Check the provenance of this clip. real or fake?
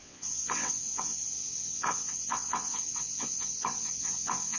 fake